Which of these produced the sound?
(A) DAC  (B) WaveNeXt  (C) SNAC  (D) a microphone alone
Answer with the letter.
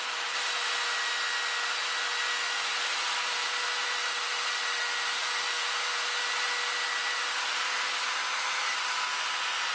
D